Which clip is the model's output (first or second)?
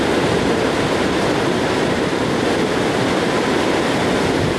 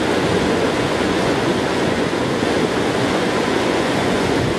second